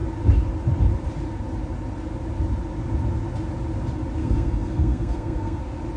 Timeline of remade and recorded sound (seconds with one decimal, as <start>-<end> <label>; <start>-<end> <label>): 0.0-4.2 recorded; 4.2-5.6 remade; 5.6-6.0 recorded